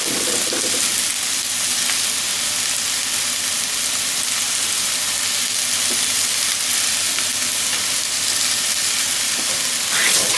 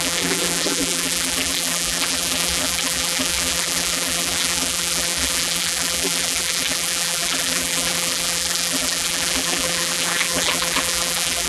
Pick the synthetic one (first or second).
second